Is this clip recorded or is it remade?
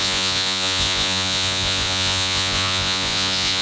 remade